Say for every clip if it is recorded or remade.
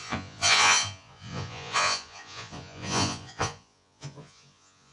remade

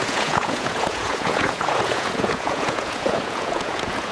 remade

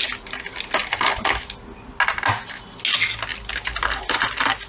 recorded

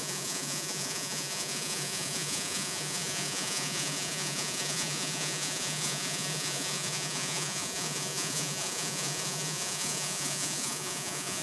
remade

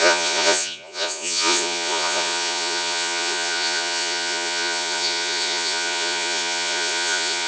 remade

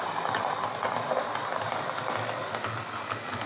recorded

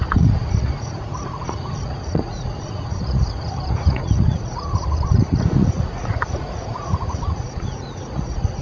remade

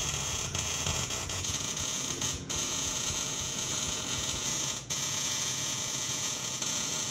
remade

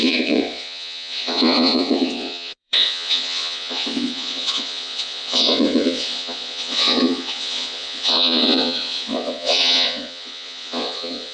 remade